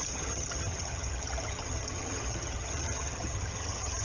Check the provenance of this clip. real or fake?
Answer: fake